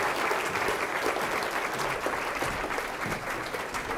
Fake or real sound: fake